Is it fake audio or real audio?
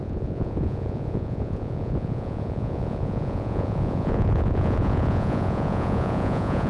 fake